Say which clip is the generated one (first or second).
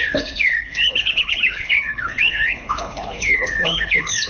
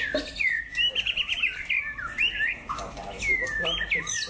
first